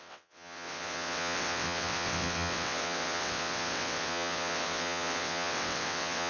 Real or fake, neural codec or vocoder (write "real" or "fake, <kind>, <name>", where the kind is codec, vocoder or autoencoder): fake, vocoder, WaveNeXt